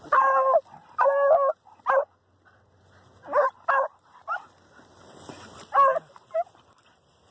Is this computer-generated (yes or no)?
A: no